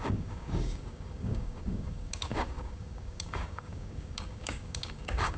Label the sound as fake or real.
fake